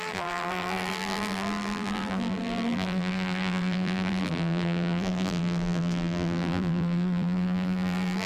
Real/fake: fake